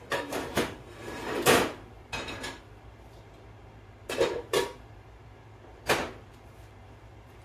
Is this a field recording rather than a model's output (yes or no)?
no